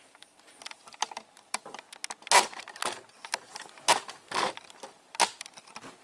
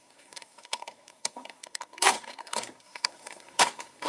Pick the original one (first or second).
first